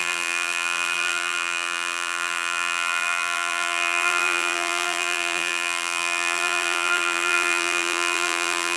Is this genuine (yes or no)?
no